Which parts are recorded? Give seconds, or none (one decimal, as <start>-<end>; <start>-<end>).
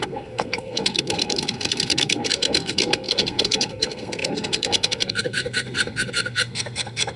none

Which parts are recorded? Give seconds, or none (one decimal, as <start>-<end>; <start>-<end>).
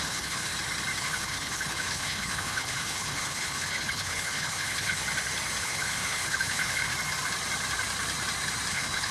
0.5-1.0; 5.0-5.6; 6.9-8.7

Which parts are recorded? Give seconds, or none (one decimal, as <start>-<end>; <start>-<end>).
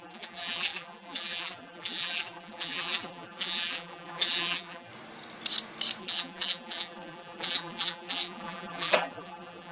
4.9-6.0